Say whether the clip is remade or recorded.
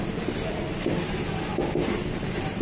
recorded